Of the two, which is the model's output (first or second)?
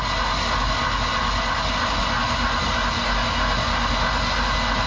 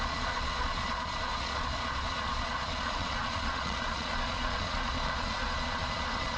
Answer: second